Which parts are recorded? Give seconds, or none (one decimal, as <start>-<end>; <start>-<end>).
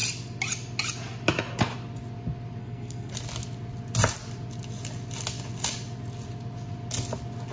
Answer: 0.0-2.6; 3.1-7.5